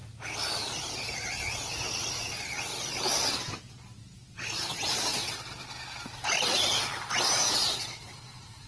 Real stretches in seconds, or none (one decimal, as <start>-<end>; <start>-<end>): 0.0-4.7; 5.4-7.5